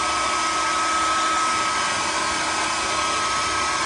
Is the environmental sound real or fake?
real